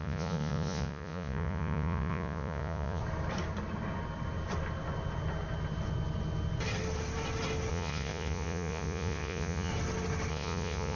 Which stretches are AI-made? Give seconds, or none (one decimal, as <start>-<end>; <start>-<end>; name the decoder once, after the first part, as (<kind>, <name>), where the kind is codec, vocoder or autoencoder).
0.0-3.0 (vocoder, Vocos); 7.7-9.7; 10.3-11.0